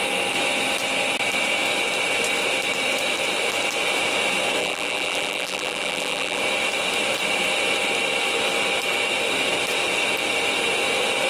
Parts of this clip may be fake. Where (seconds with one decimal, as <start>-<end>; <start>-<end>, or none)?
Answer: 4.6-6.4